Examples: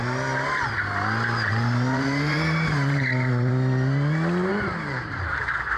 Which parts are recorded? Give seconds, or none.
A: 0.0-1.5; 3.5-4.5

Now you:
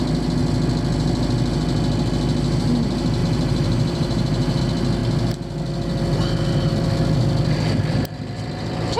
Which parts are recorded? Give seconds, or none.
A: 0.0-3.2; 4.6-9.0

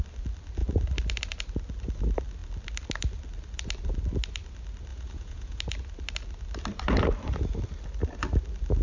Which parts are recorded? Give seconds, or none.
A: 0.0-4.9; 5.6-8.8

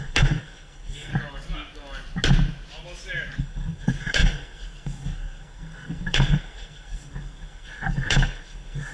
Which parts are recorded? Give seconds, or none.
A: 1.1-3.4

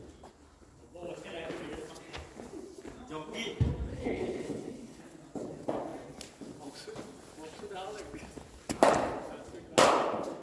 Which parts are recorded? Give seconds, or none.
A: 0.0-3.9; 5.0-10.4